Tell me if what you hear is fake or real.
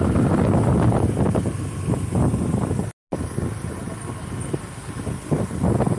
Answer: real